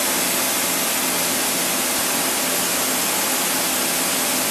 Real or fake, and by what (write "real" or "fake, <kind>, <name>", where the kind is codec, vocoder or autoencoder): real